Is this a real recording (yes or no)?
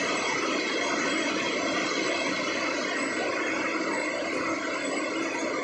yes